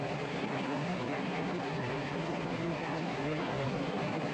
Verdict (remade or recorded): remade